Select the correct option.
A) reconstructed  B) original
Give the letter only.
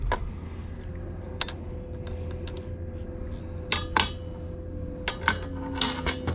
B